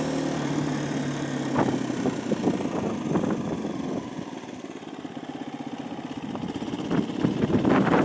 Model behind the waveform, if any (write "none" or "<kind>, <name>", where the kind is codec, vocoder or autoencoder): none